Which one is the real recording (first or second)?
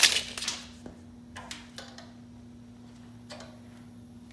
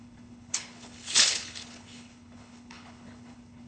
first